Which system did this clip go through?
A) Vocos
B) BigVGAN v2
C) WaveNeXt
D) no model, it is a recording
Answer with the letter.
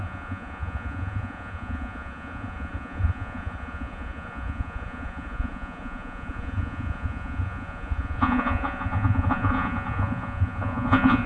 A